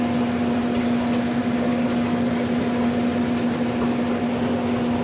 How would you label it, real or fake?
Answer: real